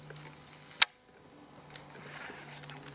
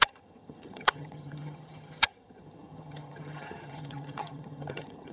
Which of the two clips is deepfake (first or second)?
second